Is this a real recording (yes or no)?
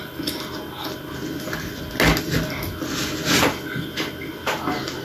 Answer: yes